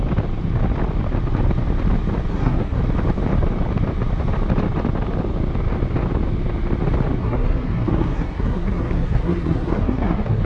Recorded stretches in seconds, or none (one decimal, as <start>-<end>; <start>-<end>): 0.0-2.3; 2.8-7.2